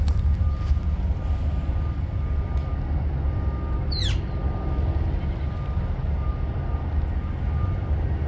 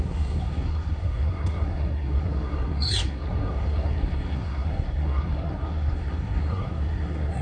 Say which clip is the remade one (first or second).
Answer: second